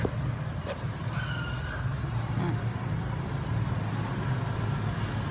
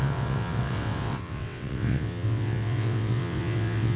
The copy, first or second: second